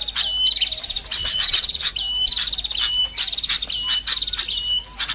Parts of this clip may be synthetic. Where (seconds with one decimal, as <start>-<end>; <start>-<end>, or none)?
1.2-1.9